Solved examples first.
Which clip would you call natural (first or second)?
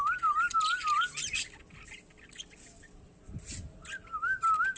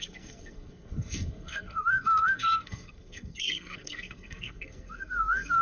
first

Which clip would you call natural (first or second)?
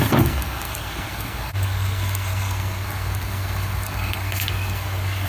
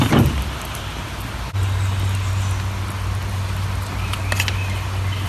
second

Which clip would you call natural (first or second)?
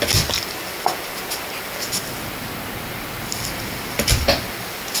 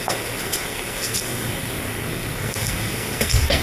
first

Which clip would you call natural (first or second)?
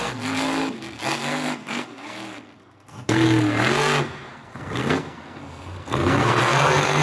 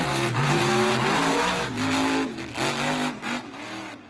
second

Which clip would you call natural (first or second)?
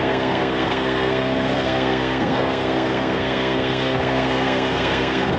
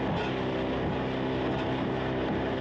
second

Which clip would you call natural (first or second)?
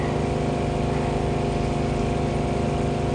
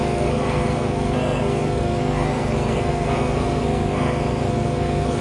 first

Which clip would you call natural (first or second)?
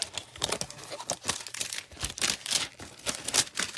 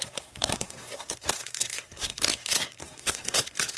first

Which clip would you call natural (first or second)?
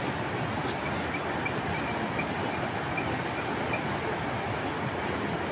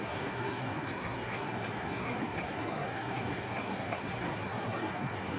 first